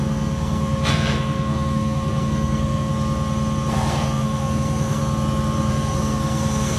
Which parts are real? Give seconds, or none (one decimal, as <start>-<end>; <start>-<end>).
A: 2.9-3.7; 5.0-5.7